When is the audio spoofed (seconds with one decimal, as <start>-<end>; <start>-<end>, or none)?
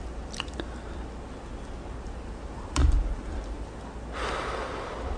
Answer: none